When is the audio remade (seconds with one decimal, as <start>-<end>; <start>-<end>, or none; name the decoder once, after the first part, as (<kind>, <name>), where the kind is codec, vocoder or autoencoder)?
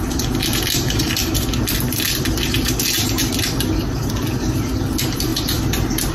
none